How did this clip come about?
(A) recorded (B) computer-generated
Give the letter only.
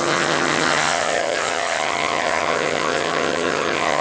B